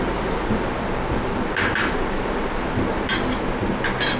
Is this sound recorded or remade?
recorded